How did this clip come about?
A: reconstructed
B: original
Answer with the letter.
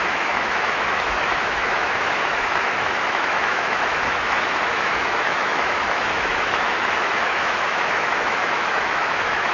A